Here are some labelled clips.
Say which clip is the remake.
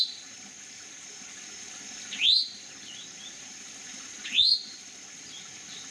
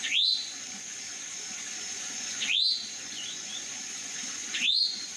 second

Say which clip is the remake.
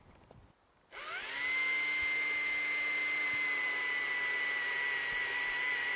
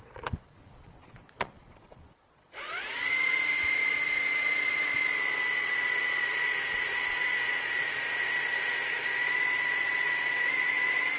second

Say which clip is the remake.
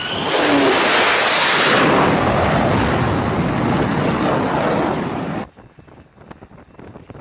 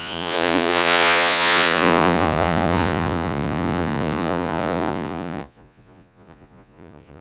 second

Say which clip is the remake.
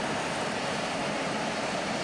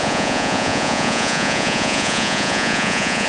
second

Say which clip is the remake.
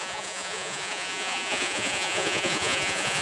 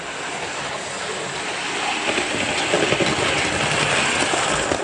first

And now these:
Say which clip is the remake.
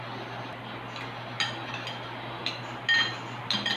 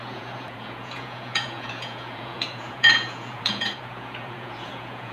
second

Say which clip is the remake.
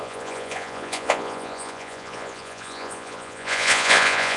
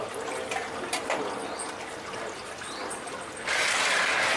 first